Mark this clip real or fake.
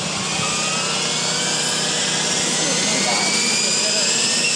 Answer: real